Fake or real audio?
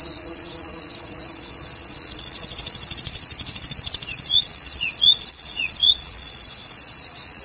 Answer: fake